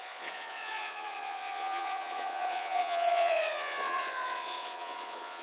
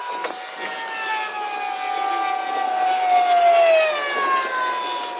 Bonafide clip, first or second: second